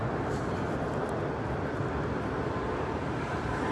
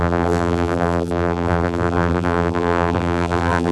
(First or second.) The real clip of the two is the first